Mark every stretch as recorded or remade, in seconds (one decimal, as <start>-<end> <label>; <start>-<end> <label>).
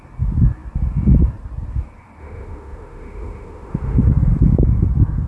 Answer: 0.0-2.2 recorded; 2.2-4.1 remade; 4.1-5.3 recorded